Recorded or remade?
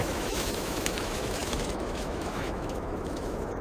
remade